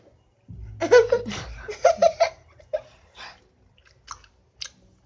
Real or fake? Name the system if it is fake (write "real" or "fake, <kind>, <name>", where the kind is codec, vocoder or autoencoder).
real